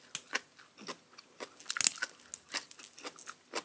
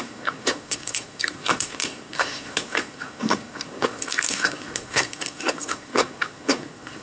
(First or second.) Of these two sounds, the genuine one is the first